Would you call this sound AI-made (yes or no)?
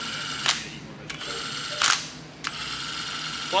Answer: no